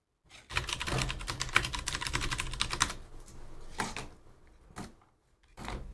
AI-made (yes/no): no